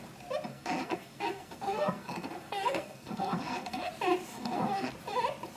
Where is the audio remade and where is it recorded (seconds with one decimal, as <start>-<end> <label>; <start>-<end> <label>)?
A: 0.0-0.5 recorded; 0.5-3.9 remade; 3.9-4.3 recorded; 4.3-4.9 remade; 4.9-5.6 recorded

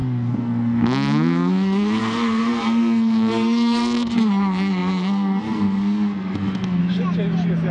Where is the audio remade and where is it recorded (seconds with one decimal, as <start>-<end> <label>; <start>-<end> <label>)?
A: 0.0-6.8 remade; 6.8-7.7 recorded

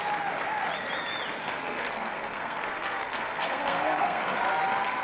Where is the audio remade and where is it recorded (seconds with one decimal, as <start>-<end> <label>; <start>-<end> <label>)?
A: 0.0-1.4 recorded; 1.4-4.4 remade; 4.4-5.0 recorded

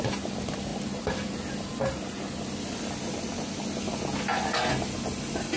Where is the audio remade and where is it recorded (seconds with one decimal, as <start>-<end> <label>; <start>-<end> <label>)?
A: 0.0-5.6 recorded

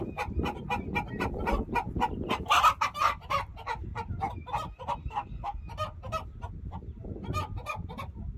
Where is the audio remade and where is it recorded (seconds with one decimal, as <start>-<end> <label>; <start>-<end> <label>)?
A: 0.0-5.0 recorded; 5.0-5.6 remade; 5.6-8.4 recorded

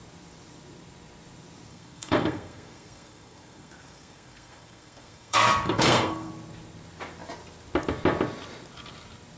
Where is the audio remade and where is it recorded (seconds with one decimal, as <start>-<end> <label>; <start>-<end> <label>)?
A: 0.0-1.7 recorded; 1.7-6.3 remade; 6.3-9.4 recorded

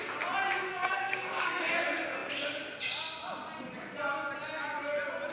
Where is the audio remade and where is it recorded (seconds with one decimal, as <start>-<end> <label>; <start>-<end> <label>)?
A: 0.0-0.7 recorded; 0.7-1.7 remade; 1.7-5.3 recorded

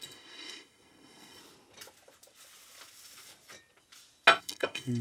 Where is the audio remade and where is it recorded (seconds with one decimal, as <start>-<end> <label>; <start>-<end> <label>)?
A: 0.0-1.4 remade; 1.4-4.4 recorded; 4.4-5.0 remade